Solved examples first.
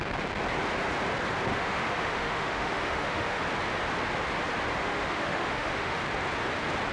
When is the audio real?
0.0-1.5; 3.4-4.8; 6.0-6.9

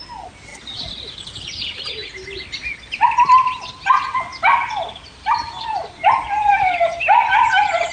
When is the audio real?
0.0-7.9

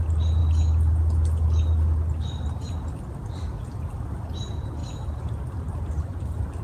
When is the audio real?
0.0-6.6